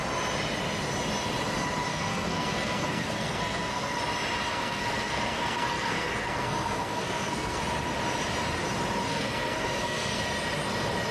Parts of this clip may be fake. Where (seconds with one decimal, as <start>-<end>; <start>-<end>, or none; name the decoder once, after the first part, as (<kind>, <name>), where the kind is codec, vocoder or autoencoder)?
1.9-4.0 (codec, SNAC); 4.5-7.6; 9.1-10.2